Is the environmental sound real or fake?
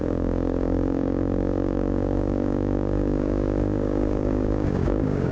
fake